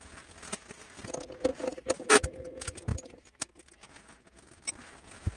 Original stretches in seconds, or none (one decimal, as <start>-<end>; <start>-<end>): 0.0-5.4